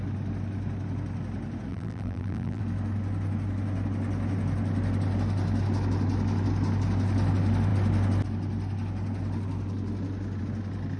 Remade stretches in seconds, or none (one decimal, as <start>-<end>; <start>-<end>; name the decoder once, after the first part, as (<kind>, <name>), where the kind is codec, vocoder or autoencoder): 1.7-2.6 (vocoder, BigVGAN v2)